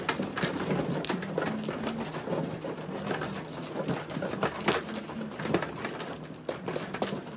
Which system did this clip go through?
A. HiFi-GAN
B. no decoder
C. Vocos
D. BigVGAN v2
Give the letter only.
B